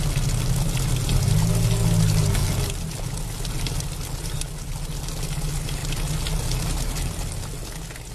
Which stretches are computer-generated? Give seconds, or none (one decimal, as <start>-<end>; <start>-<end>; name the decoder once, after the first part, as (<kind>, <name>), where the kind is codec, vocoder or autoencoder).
none